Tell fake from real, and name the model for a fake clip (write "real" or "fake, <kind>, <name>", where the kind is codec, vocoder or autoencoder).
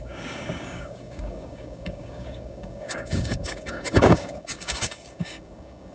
fake, codec, DAC